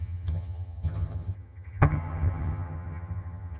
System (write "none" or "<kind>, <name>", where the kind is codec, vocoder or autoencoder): vocoder, HiFi-GAN